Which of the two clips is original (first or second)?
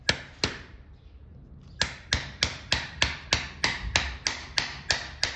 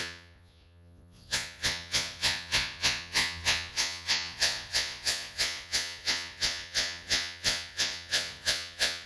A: first